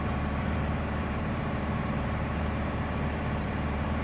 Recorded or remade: remade